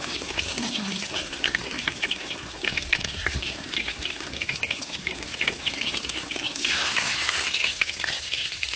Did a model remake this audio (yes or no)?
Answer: yes